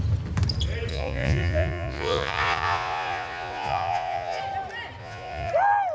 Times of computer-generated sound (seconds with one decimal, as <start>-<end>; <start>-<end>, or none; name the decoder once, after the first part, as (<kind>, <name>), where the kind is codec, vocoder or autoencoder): 0.9-4.4 (vocoder, Vocos); 5.0-5.5